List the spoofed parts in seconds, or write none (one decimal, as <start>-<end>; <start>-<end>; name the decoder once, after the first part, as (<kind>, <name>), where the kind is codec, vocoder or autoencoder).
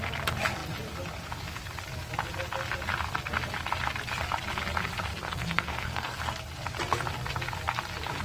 5.1-6.2 (codec, SNAC)